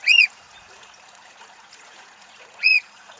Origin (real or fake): fake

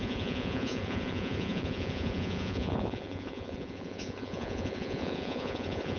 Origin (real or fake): fake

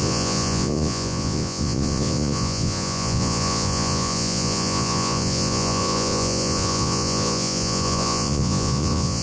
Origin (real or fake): fake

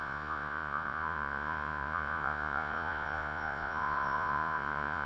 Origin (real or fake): fake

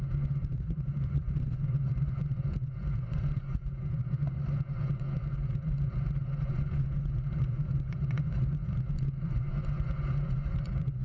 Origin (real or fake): fake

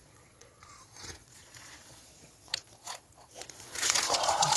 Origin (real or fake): fake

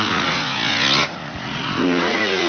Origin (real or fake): fake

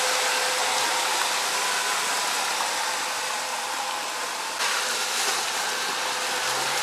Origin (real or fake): real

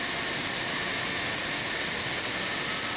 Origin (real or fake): real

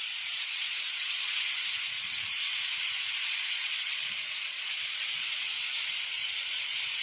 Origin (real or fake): fake